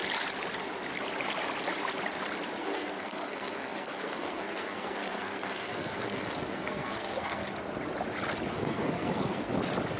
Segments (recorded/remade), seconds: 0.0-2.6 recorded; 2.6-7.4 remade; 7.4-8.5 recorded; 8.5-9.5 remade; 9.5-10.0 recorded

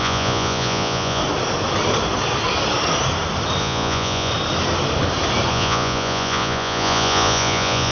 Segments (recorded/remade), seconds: 0.0-1.2 remade; 1.2-3.6 recorded; 3.6-4.3 remade; 4.3-5.5 recorded; 5.5-7.9 remade

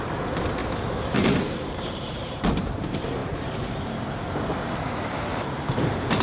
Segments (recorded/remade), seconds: 0.0-0.6 recorded; 0.6-2.4 remade; 2.4-3.2 recorded; 3.2-3.9 remade; 3.9-5.3 recorded; 5.3-6.2 remade

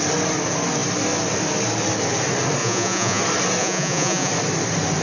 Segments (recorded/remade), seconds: 0.0-2.6 recorded; 2.6-3.2 remade; 3.2-3.6 recorded; 3.6-4.3 remade; 4.3-5.0 recorded

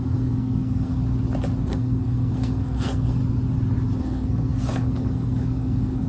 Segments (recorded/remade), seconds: 0.0-1.0 remade; 1.0-1.6 recorded; 1.6-3.2 remade; 3.2-4.0 recorded; 4.0-6.1 remade

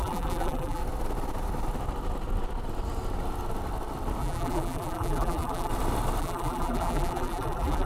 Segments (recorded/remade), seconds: 0.0-0.8 remade; 0.8-4.2 recorded; 4.2-5.7 remade; 5.7-6.2 recorded; 6.2-7.9 remade

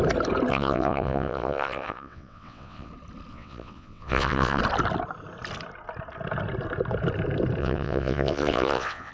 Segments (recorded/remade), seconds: 0.0-0.5 recorded; 0.5-2.9 remade; 2.9-3.3 recorded; 3.3-4.6 remade; 4.6-7.6 recorded; 7.6-9.1 remade